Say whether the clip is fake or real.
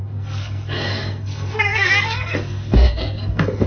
fake